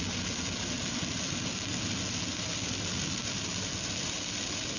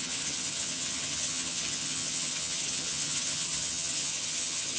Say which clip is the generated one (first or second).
second